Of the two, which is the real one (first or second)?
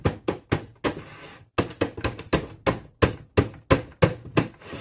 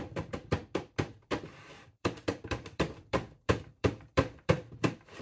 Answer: first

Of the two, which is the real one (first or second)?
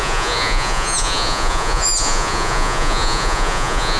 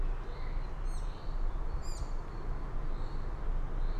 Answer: second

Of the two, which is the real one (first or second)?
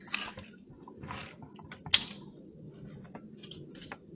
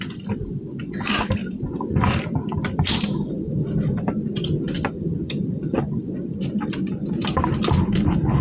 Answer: first